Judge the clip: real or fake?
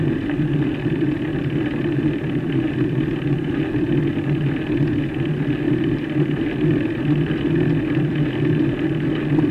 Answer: real